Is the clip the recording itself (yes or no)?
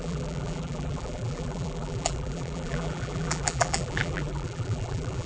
no